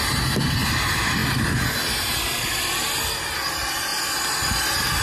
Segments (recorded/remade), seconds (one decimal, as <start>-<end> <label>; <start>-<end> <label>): 0.0-5.0 recorded